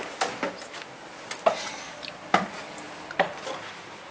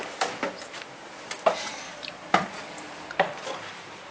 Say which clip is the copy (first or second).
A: second